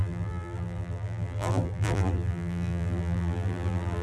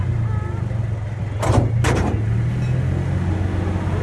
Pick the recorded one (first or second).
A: second